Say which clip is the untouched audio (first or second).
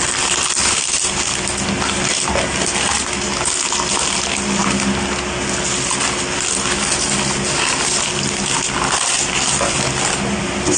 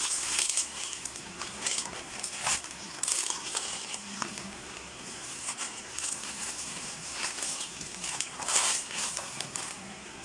first